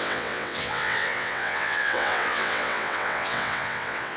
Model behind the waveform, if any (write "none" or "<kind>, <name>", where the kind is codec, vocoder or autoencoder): vocoder, WaveNeXt